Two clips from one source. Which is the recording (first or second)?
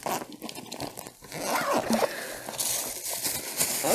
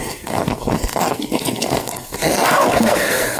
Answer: first